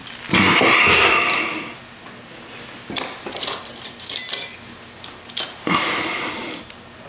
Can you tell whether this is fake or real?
real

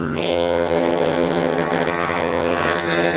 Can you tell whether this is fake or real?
fake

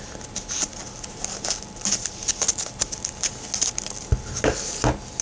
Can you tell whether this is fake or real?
real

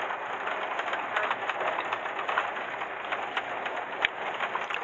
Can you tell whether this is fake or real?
real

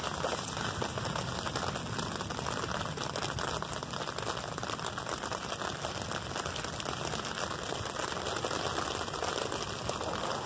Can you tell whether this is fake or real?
real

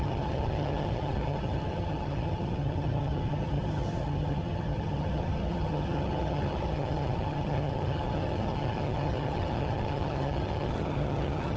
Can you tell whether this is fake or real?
fake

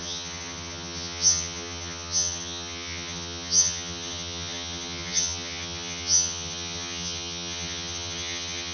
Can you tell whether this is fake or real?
fake